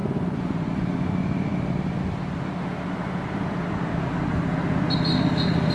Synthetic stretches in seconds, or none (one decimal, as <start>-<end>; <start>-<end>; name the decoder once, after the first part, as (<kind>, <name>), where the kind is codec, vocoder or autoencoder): 0.0-1.1 (vocoder, Vocos)